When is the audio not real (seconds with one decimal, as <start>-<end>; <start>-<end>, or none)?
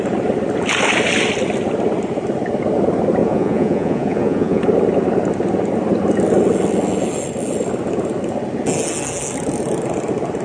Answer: 3.2-4.6